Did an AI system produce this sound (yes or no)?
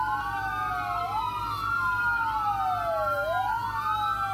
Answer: no